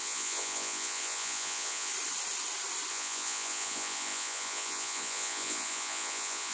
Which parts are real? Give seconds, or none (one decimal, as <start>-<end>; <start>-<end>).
1.9-2.9